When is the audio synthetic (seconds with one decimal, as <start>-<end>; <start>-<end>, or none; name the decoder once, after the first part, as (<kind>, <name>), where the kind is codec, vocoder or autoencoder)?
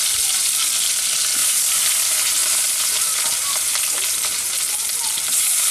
0.0-0.6 (vocoder, BigVGAN v2); 1.4-2.0; 2.4-4.8